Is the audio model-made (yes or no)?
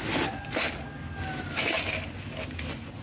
no